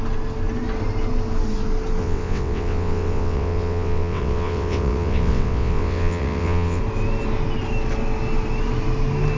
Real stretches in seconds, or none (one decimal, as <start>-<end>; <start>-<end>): 0.0-2.0; 6.8-9.4